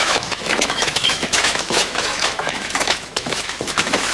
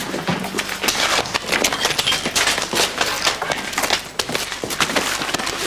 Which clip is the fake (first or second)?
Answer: first